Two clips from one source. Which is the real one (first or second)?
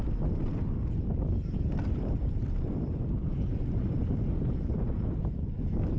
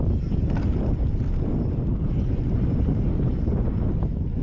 second